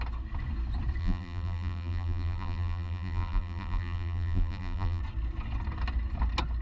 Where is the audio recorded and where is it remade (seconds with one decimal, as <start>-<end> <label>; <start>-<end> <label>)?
0.0-1.0 recorded; 1.0-5.0 remade; 5.0-6.6 recorded